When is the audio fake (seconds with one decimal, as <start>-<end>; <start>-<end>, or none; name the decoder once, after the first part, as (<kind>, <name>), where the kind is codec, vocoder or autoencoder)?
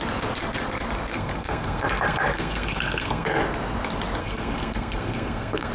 1.1-3.3 (codec, SNAC); 4.2-5.7